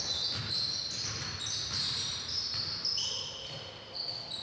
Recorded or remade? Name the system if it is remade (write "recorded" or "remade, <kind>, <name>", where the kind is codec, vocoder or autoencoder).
recorded